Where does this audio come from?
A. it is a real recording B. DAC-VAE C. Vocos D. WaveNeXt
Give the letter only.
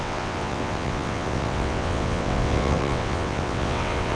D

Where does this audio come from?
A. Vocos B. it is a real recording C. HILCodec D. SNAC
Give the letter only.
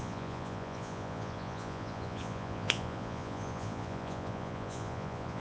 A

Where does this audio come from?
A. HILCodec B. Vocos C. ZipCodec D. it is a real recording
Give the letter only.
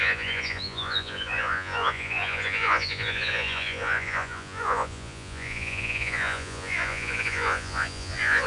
B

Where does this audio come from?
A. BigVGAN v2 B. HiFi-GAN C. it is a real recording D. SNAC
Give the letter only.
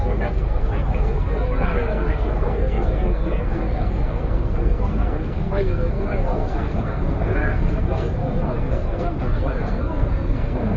D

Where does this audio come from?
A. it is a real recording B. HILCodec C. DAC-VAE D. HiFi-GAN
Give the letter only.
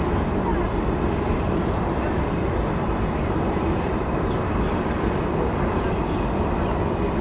A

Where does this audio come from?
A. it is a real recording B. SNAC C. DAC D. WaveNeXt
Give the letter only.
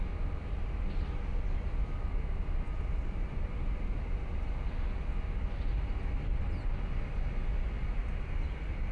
A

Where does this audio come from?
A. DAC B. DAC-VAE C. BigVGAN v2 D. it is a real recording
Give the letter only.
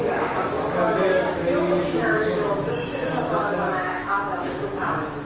B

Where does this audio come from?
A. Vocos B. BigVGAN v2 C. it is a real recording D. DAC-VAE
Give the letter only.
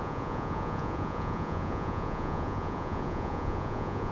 A